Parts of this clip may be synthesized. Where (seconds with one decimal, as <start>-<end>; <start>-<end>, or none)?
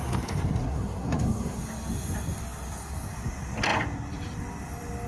0.6-1.6